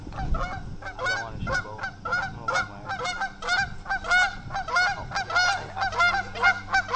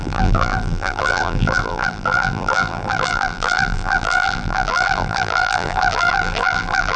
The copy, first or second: second